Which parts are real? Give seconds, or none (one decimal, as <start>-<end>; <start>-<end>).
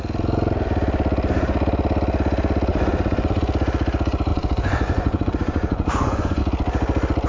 0.0-2.7; 3.4-4.3; 6.4-7.3